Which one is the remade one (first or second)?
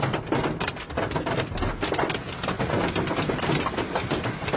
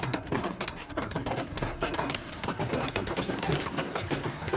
second